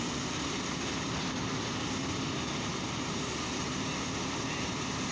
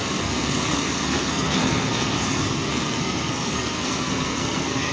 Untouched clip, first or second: first